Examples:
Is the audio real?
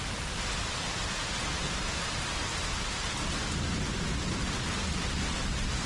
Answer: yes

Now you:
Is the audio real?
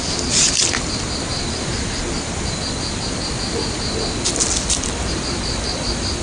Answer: yes